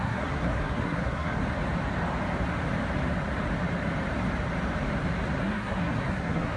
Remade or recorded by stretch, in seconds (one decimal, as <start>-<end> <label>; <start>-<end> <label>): 0.0-1.4 remade; 1.4-5.4 recorded; 5.4-6.6 remade